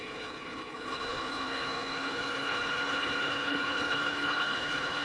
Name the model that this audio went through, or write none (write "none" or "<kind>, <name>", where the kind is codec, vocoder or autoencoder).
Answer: codec, HILCodec